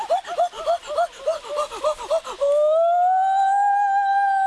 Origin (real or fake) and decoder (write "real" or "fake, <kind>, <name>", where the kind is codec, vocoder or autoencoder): real